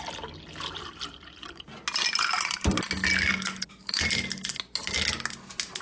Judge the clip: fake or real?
real